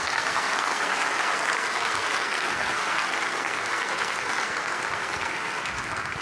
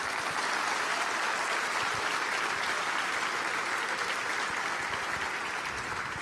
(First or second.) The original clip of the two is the second